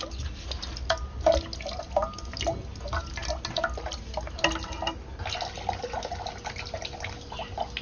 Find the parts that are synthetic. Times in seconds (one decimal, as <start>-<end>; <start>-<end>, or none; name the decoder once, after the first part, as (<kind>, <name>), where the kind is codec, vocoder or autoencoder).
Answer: none